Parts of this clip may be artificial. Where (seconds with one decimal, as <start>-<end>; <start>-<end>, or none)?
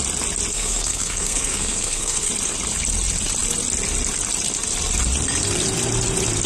0.5-2.3